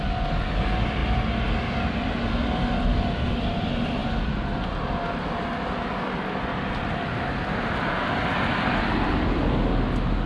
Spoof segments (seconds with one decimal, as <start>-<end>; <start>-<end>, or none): none